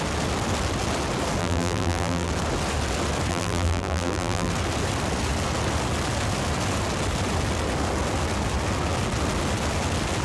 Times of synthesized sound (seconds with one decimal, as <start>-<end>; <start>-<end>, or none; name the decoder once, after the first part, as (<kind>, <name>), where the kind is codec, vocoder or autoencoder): 1.4-2.3 (vocoder, BigVGAN v2); 3.3-4.5